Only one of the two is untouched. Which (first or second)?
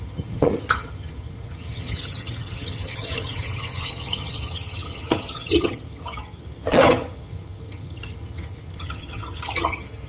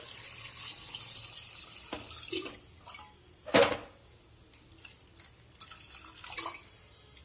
second